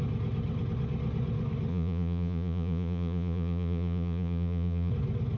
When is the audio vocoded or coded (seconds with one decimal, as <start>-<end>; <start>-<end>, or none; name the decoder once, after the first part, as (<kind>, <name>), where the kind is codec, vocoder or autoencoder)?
1.7-4.9 (vocoder, Vocos)